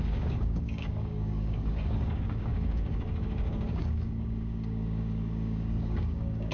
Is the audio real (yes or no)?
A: no